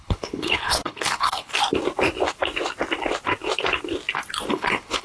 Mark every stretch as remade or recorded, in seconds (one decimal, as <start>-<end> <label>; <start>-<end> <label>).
0.0-1.5 remade; 1.5-4.5 recorded; 4.5-5.0 remade